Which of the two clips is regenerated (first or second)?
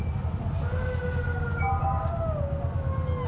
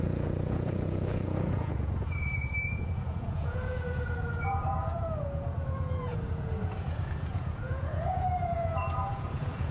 second